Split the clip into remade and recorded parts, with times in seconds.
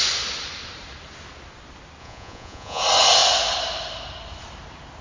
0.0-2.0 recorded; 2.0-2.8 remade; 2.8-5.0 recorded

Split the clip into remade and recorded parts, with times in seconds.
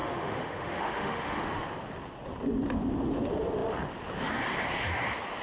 0.0-1.4 remade; 1.4-5.4 recorded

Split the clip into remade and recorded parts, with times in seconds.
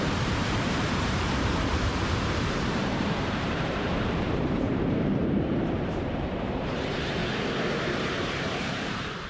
0.0-7.2 remade; 7.2-7.8 recorded; 7.8-9.3 remade